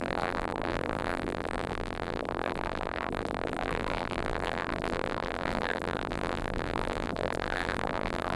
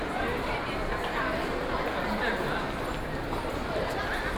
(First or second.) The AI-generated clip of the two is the first